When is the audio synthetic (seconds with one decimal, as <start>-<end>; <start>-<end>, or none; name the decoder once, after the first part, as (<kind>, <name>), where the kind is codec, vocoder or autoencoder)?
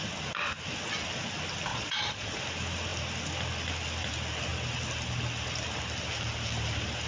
1.7-2.3 (vocoder, Vocos)